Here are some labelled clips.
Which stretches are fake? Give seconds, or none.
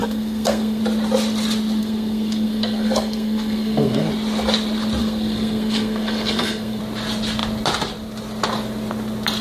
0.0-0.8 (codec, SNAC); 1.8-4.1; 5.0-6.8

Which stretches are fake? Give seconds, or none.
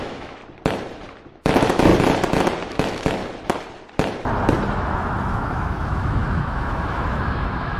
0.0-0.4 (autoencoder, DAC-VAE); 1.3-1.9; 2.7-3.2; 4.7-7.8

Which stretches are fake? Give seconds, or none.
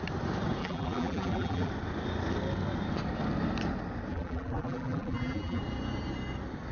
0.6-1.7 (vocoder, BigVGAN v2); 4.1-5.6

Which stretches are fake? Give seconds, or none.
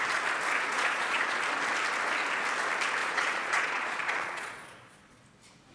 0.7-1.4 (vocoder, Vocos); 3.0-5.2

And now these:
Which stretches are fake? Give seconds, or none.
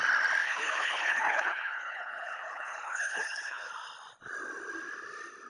0.4-3.7 (codec, HILCodec)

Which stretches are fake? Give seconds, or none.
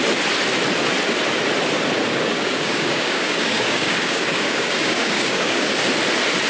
2.3-5.7 (codec, DAC)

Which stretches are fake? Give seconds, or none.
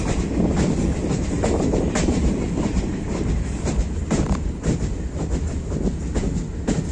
1.0-5.1 (vocoder, BigVGAN v2)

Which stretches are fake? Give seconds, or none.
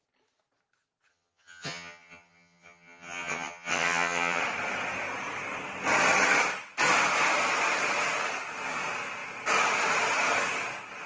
1.1-4.4 (vocoder, HiFi-GAN)